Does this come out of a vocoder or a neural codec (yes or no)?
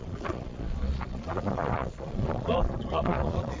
yes